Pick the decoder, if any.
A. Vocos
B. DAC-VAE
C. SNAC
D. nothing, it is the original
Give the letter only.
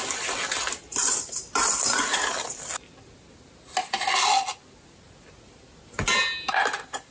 D